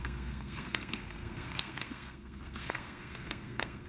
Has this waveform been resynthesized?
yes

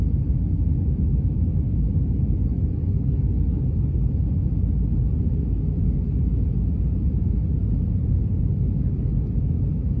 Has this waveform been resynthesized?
no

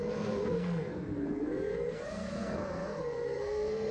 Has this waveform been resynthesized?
yes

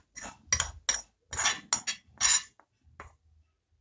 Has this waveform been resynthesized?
no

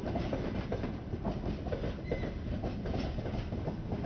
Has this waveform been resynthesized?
no